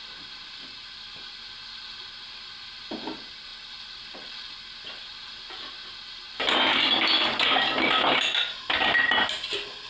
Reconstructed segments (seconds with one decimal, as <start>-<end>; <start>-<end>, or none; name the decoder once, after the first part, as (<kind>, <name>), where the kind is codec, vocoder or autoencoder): none